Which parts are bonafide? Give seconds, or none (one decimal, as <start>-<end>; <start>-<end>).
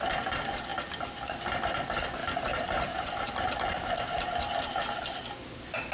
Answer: 0.0-5.9